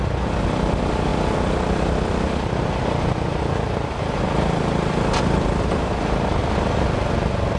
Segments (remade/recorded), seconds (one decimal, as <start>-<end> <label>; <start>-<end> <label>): 0.0-7.6 recorded